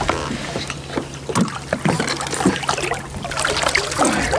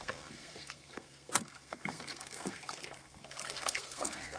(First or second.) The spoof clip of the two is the second